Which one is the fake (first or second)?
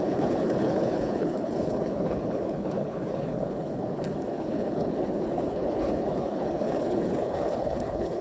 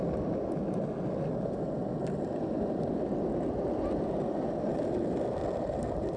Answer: first